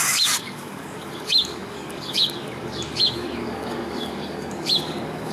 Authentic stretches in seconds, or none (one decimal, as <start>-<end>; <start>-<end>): none